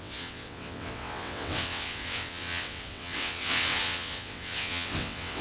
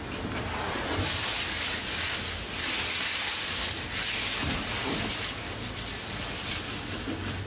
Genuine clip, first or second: second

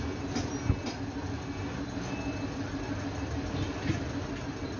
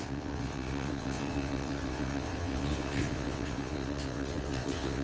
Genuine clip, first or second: first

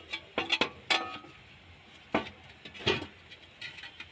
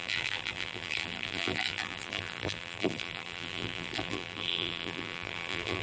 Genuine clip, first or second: first